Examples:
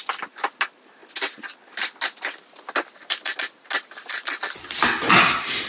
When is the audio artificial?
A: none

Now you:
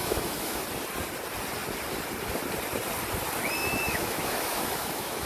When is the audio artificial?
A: 0.0-0.6 (autoencoder, DAC-VAE); 3.6-5.3